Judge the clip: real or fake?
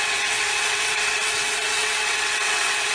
fake